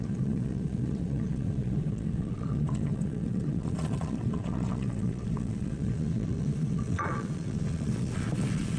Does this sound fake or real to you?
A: fake